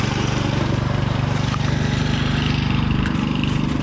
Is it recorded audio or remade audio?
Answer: remade